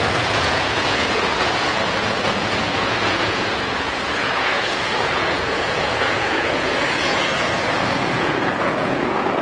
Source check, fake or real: fake